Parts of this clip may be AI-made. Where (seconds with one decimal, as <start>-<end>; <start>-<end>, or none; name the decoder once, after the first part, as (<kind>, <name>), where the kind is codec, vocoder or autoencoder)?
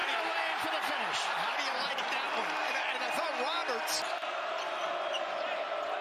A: 0.0-0.6 (vocoder, BigVGAN v2); 2.6-3.2